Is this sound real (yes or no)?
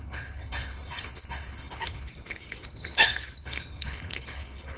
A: no